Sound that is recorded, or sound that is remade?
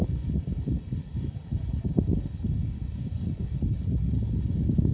remade